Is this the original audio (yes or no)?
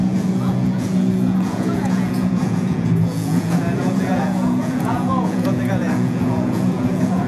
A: no